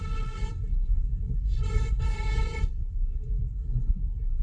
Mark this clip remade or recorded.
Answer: remade